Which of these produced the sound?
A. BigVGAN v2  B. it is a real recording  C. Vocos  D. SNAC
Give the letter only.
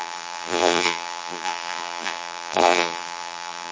A